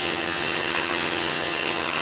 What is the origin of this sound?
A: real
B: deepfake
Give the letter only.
B